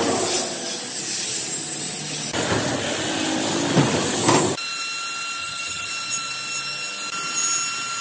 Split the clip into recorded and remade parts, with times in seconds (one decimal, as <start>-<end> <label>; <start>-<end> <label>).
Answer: 0.0-5.4 recorded; 5.4-5.9 remade; 5.9-8.0 recorded